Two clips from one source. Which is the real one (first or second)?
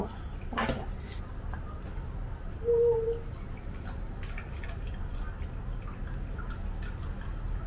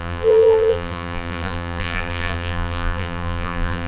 first